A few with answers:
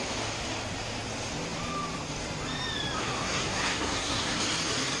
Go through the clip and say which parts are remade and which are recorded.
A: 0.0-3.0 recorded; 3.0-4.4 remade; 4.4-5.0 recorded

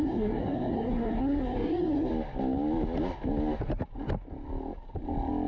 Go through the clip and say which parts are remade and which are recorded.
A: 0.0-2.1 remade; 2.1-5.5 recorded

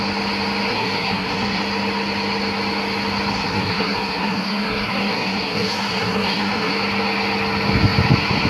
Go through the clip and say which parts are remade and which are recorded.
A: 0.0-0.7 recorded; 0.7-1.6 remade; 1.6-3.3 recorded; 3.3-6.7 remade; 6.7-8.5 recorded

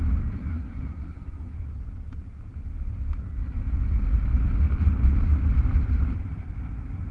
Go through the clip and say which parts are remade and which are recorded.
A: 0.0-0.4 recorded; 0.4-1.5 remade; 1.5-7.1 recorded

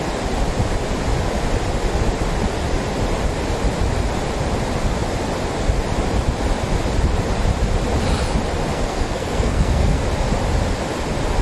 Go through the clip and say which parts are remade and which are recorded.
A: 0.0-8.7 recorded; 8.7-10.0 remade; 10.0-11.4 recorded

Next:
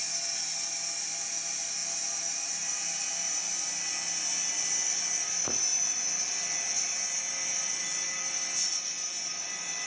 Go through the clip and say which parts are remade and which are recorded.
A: 0.0-9.9 recorded

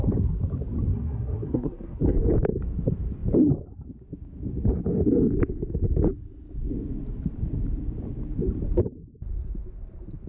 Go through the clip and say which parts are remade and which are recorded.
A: 0.0-0.9 recorded; 0.9-2.0 remade; 2.0-10.3 recorded